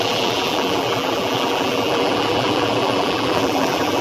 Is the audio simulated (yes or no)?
yes